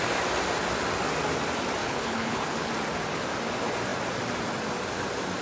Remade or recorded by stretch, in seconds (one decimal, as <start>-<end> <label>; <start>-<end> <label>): 0.0-1.8 recorded; 1.8-2.7 remade; 2.7-5.4 recorded

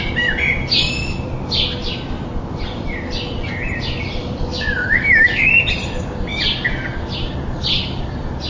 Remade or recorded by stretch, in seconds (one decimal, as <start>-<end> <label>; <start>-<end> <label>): 0.0-4.5 recorded; 4.5-5.5 remade; 5.5-8.5 recorded

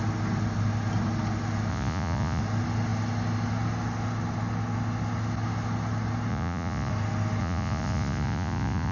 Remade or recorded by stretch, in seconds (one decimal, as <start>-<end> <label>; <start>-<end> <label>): 0.0-1.7 recorded; 1.7-2.4 remade; 2.4-6.3 recorded; 6.3-6.9 remade; 6.9-7.4 recorded; 7.4-8.9 remade

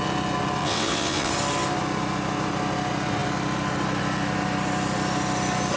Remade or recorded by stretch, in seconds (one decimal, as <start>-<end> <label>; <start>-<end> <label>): 0.0-0.6 recorded; 0.6-1.3 remade; 1.3-5.8 recorded

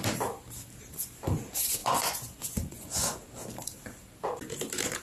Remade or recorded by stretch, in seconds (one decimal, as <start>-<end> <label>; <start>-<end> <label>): 0.0-1.8 recorded; 1.8-3.2 remade; 3.2-5.0 recorded

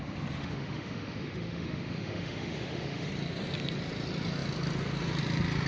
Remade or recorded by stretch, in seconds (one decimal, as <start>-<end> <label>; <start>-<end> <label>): 0.0-0.4 recorded; 0.4-3.1 remade; 3.1-5.7 recorded

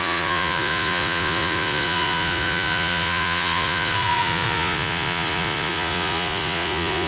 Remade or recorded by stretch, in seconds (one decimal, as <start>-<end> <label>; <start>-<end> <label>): 0.0-7.1 remade